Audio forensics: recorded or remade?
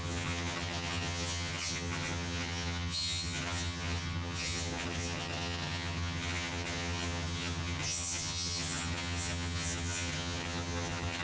remade